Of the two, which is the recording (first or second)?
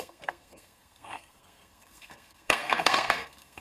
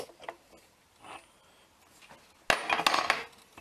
second